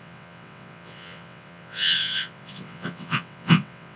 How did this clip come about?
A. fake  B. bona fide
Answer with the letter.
A